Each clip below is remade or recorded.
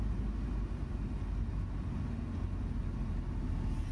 recorded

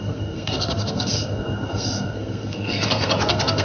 remade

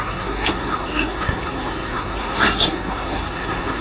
remade